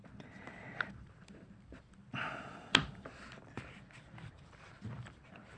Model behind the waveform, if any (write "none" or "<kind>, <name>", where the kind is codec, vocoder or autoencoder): vocoder, BigVGAN v2